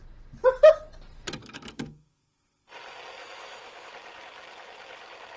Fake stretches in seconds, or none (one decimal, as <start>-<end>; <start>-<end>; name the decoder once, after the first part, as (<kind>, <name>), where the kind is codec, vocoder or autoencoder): 1.4-2.2 (autoencoder, DAC-VAE); 3.2-3.9

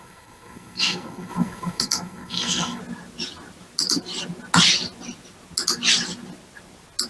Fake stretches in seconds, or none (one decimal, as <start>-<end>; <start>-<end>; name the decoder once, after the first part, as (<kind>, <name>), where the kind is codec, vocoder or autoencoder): 0.0-2.8 (codec, SNAC)